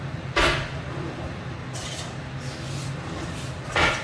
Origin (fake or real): real